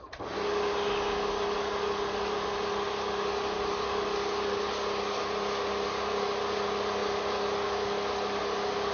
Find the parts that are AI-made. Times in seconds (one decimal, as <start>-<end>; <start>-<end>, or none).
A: none